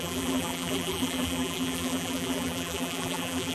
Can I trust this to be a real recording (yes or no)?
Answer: no